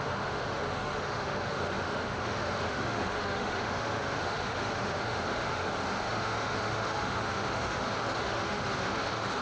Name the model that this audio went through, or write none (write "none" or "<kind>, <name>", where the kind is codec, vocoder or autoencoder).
autoencoder, DAC-VAE